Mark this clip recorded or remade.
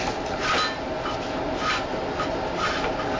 recorded